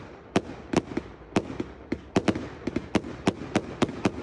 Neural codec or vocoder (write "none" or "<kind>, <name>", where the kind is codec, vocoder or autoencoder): none